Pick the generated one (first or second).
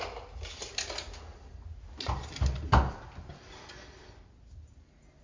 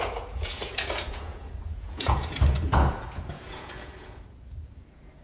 second